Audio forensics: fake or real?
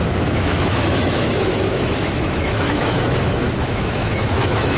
fake